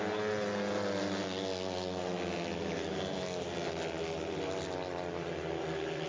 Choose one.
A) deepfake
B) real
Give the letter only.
B